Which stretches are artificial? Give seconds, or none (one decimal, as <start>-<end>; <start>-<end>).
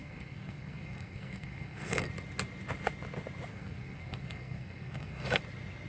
0.0-2.1; 3.5-5.4